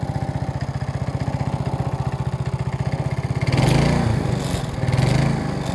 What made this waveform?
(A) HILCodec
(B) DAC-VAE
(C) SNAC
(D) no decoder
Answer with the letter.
D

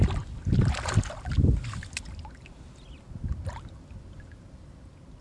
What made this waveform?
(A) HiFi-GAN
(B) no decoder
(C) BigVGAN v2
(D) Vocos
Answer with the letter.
B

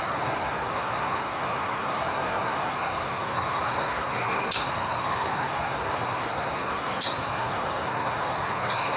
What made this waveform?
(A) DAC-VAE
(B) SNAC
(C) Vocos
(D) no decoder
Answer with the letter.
B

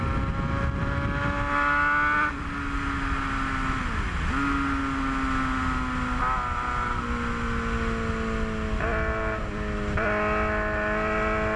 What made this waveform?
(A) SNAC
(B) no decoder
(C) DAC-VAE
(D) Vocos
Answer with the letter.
B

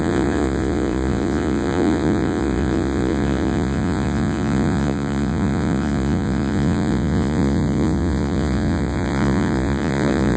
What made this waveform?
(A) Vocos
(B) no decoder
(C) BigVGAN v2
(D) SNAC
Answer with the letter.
A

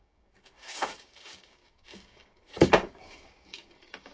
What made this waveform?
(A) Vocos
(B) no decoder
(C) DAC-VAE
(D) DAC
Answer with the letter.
D